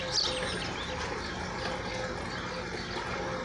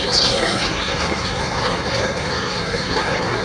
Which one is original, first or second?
first